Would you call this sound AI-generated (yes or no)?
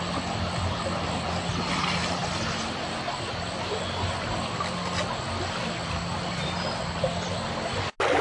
no